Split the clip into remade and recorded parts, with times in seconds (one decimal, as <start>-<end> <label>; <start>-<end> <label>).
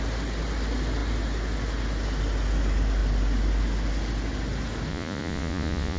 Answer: 0.0-4.9 recorded; 4.9-6.0 remade